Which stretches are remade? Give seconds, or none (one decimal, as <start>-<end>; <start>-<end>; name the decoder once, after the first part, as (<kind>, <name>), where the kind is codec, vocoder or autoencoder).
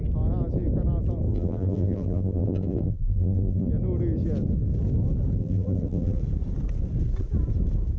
1.3-3.7 (vocoder, BigVGAN v2); 5.4-6.2